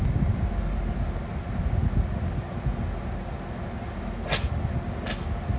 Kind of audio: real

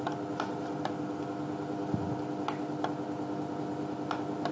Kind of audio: real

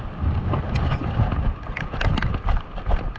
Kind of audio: real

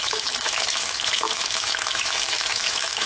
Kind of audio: fake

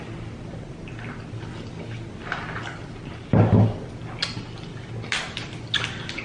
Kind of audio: real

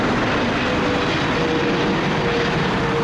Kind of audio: real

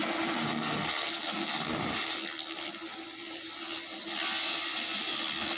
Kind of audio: real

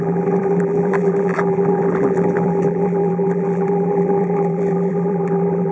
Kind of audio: fake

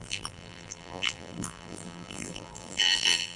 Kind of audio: fake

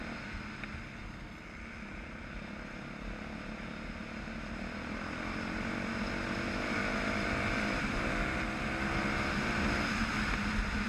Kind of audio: real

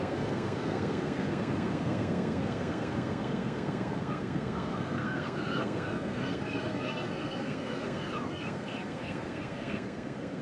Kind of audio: fake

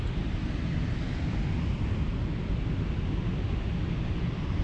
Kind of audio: real